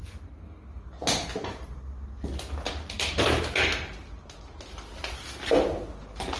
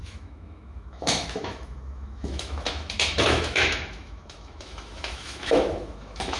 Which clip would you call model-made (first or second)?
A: second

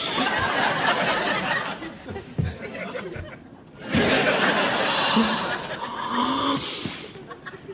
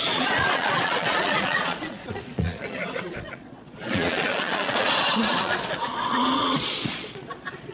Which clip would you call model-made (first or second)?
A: second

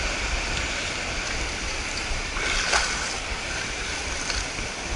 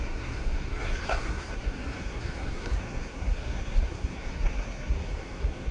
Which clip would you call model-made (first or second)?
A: second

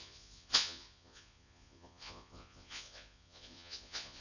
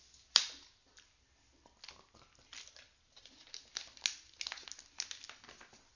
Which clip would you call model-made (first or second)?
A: first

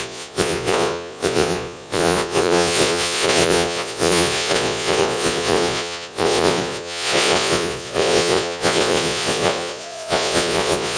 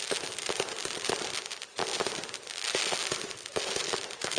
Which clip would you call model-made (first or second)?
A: first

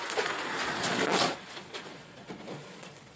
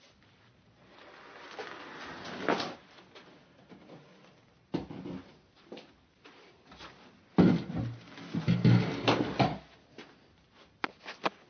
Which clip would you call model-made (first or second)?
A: first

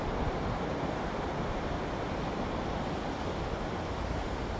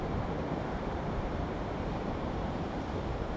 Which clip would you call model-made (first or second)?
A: second